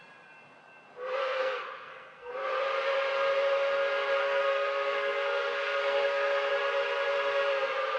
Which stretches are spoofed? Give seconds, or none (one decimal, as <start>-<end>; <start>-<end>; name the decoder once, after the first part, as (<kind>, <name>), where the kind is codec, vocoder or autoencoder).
1.2-2.3 (codec, SNAC); 4.2-6.5